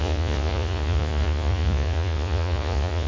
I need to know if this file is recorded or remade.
remade